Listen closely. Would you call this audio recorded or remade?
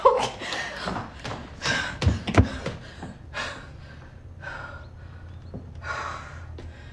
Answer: recorded